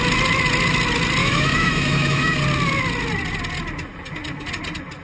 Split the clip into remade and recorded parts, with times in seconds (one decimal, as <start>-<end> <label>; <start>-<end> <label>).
0.0-1.2 recorded; 1.2-2.4 remade; 2.4-5.0 recorded